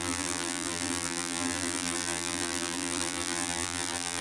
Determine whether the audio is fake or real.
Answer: fake